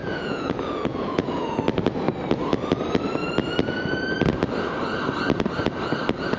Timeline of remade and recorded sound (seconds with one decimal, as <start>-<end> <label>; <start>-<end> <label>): 0.0-1.6 remade; 1.6-6.4 recorded